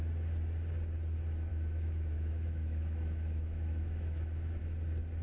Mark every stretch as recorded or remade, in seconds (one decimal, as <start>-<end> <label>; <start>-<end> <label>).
0.0-1.5 recorded; 1.5-4.6 remade; 4.6-5.2 recorded